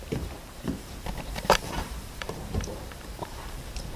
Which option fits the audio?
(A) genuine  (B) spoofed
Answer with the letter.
B